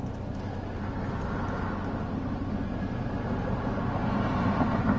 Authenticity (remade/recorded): recorded